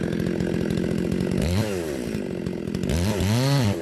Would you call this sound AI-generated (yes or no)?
no